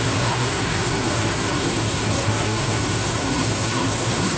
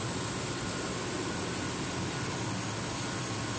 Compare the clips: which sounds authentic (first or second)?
second